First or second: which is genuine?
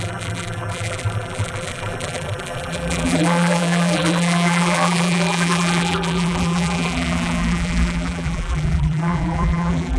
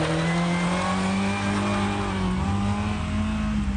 second